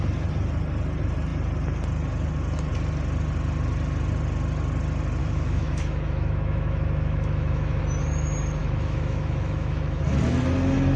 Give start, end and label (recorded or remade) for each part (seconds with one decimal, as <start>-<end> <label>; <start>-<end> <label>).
0.0-5.2 recorded; 5.2-7.8 remade; 7.8-8.6 recorded; 8.6-10.1 remade; 10.1-11.0 recorded